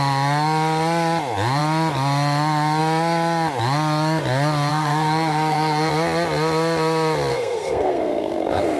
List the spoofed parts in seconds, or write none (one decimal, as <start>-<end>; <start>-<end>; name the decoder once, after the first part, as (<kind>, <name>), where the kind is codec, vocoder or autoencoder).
4.7-5.9 (codec, SNAC); 7.3-8.8